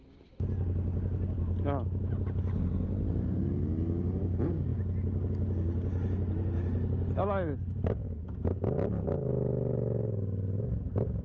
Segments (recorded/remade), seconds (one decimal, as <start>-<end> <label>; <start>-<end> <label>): 0.0-11.2 recorded